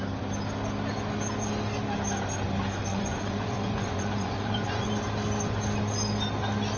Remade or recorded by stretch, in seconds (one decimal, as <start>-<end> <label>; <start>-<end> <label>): 0.0-2.9 recorded; 2.9-4.9 remade; 4.9-6.8 recorded